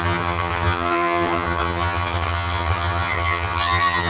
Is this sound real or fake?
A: fake